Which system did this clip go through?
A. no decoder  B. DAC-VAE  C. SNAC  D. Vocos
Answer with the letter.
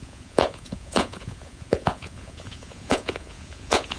D